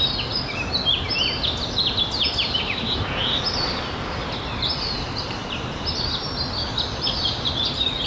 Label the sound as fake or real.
real